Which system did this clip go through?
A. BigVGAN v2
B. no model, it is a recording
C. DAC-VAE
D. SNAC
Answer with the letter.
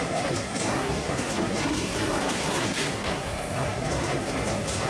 D